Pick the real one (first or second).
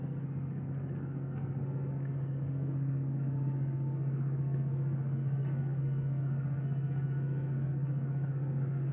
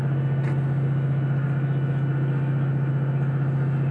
second